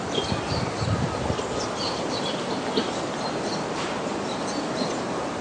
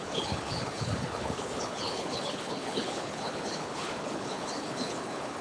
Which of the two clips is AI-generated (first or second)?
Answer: second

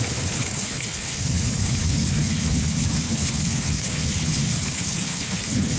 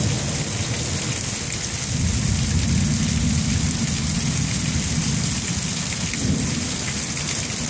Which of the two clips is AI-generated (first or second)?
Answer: first